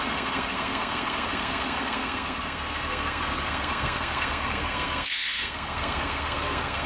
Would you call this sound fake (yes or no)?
yes